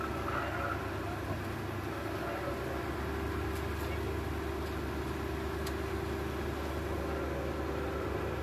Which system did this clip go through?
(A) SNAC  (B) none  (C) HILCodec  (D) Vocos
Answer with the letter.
B